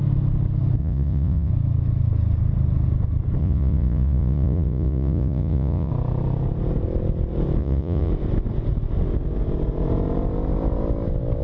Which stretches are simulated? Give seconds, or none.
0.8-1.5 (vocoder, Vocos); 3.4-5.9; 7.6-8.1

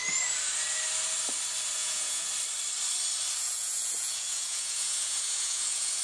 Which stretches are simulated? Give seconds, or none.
1.8-2.3 (vocoder, Vocos); 3.4-6.0

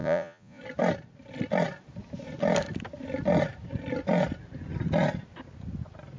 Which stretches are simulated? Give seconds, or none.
0.0-0.6 (vocoder, Vocos)

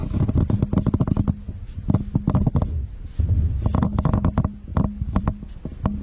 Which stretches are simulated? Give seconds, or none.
none